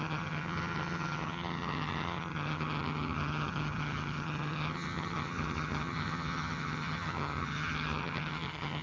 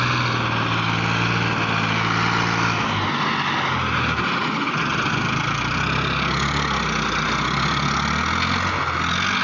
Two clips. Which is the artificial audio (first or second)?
first